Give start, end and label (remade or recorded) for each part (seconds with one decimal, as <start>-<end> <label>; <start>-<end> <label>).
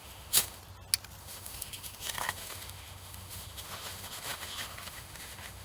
0.0-0.6 remade; 0.6-1.2 recorded; 1.2-5.6 remade